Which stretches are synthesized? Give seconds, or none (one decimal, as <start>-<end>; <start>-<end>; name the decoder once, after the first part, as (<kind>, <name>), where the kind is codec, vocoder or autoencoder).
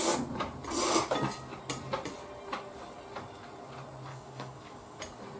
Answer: 4.1-5.0 (codec, DAC)